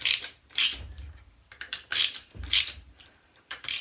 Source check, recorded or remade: remade